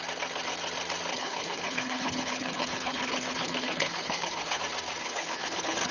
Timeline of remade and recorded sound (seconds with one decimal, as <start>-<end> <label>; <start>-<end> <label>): 0.0-1.1 recorded; 1.1-4.6 remade; 4.6-5.0 recorded; 5.0-5.9 remade